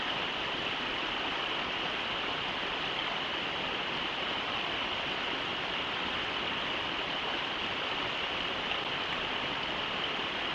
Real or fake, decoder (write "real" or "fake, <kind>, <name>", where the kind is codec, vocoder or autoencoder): fake, vocoder, BigVGAN v2